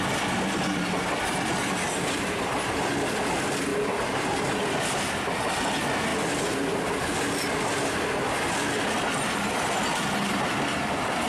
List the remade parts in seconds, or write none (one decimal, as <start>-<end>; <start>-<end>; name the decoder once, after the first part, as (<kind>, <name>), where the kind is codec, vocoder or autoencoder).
3.7-4.5 (vocoder, BigVGAN v2)